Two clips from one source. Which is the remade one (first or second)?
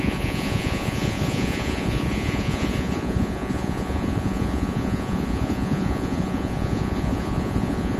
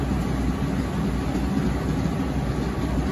first